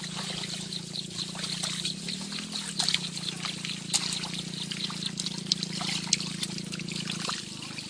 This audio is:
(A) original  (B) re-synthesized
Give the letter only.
A